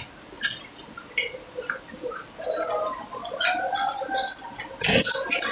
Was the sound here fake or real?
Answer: real